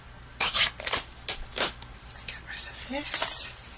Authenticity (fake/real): real